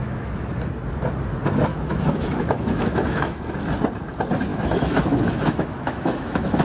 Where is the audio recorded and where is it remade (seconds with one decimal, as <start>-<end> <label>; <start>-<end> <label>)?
0.0-0.5 remade; 0.5-1.7 recorded; 1.7-3.6 remade; 3.6-4.5 recorded; 4.5-6.6 remade